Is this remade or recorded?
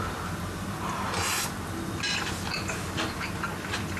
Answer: recorded